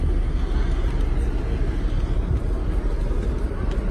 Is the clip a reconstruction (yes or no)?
no